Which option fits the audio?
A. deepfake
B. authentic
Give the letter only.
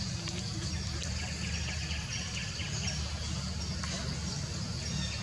B